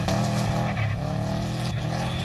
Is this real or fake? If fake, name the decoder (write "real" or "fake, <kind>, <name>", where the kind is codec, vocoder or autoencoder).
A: real